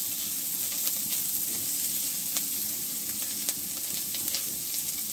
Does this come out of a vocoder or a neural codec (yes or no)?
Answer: no